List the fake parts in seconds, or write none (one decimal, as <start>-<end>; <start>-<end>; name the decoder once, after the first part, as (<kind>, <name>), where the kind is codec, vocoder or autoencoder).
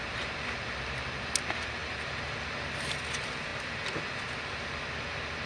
none